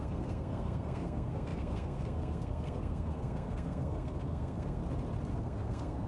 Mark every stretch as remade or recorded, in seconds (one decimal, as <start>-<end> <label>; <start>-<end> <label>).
0.0-4.8 remade; 4.8-5.3 recorded; 5.3-6.1 remade